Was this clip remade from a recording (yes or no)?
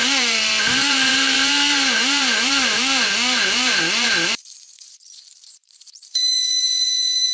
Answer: yes